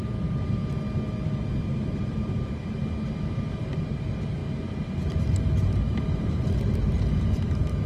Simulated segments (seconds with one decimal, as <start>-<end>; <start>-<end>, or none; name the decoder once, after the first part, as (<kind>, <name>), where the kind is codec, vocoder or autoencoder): 0.0-0.6 (vocoder, BigVGAN v2); 1.6-2.8; 3.7-7.9